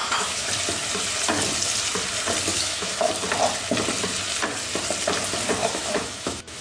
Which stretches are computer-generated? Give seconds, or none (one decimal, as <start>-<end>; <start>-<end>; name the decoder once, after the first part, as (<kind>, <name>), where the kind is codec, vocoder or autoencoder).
0.0-0.5 (autoencoder, DAC-VAE); 2.5-3.1; 5.6-6.6